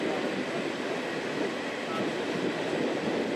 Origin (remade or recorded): recorded